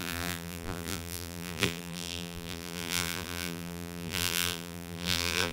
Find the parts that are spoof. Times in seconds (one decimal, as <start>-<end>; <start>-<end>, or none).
0.0-5.5